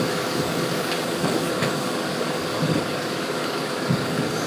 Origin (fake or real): fake